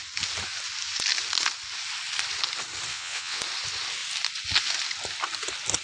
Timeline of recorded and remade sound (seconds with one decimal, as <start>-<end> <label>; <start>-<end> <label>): 0.0-2.9 recorded; 2.9-3.4 remade; 3.4-5.8 recorded